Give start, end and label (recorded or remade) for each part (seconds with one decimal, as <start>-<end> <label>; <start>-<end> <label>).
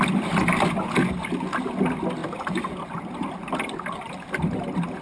0.0-5.0 recorded